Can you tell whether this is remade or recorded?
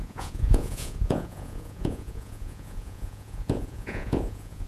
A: remade